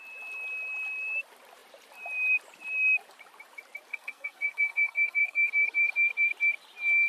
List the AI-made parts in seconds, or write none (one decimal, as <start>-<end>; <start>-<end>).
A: 3.9-5.5